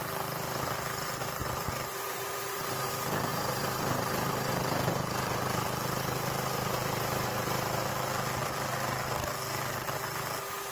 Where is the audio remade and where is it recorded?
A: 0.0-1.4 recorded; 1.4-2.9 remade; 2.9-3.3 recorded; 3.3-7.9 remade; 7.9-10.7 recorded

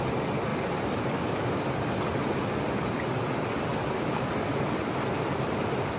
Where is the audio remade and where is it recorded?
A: 0.0-0.5 recorded; 0.5-1.6 remade; 1.6-6.0 recorded

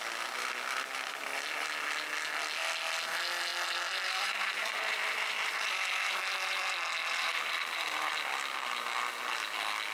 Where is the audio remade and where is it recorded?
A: 0.0-3.5 recorded; 3.5-7.9 remade; 7.9-9.9 recorded

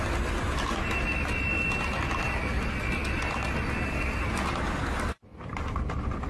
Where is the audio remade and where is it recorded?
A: 0.0-6.3 recorded

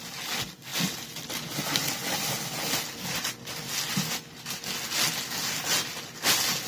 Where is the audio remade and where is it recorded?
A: 0.0-6.7 recorded